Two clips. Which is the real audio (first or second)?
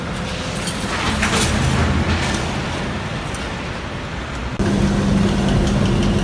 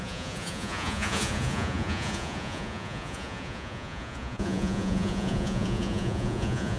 first